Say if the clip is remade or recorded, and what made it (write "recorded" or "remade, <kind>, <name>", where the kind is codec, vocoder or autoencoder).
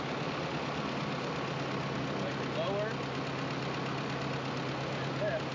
recorded